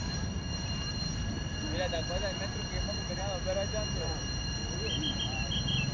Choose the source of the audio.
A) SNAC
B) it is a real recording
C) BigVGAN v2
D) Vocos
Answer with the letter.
B